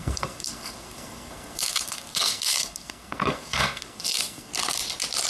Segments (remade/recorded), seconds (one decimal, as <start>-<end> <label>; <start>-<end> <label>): 0.0-4.5 remade; 4.5-5.3 recorded